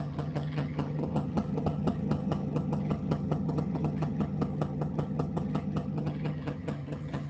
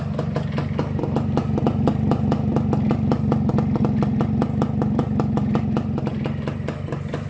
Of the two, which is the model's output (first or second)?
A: first